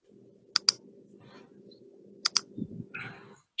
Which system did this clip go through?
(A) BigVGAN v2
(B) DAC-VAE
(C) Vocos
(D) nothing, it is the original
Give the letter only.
D